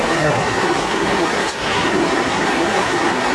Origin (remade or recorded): remade